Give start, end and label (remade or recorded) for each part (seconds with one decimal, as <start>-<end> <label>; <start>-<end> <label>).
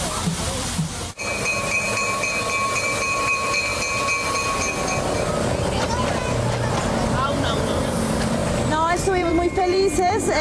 0.0-3.7 remade; 3.7-6.7 recorded; 6.7-10.4 remade